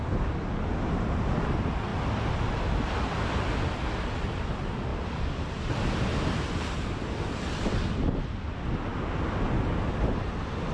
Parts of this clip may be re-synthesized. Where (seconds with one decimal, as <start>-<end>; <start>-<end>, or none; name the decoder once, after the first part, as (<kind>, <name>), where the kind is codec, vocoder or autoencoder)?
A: none